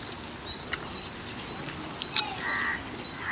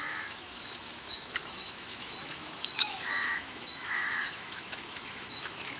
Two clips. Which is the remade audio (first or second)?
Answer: second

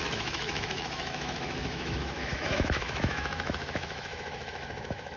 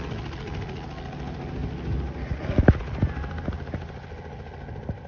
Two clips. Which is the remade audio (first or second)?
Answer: first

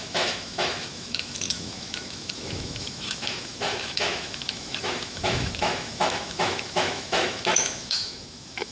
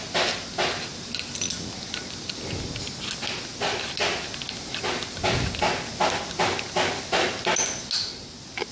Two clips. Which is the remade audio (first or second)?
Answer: first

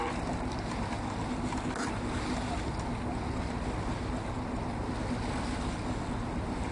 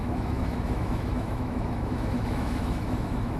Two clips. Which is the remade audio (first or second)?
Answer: second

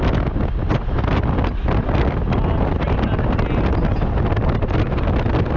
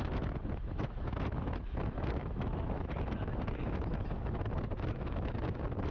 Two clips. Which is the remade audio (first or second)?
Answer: second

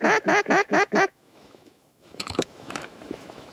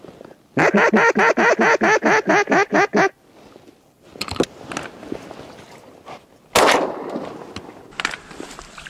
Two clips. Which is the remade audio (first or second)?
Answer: first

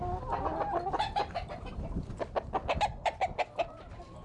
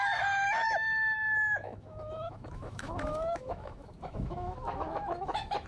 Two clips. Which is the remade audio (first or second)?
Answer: second